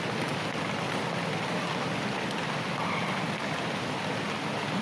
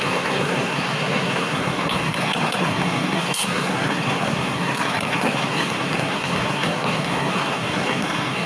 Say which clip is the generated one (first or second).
second